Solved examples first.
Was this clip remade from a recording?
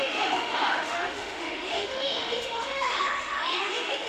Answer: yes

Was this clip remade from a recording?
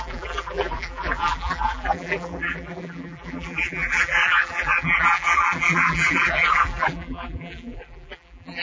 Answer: yes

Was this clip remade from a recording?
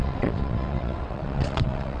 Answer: yes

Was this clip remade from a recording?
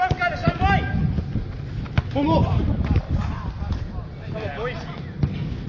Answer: no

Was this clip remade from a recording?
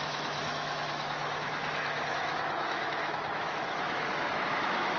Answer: yes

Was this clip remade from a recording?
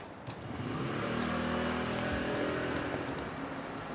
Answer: no